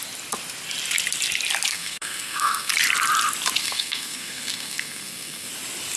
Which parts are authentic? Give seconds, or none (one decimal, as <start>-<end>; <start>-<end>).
0.0-1.7; 2.7-3.6; 5.5-6.0